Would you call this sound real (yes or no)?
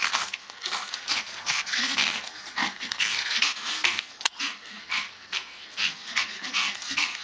no